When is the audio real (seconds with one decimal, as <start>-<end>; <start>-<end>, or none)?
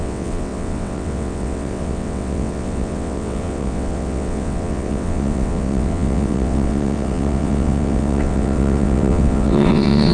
none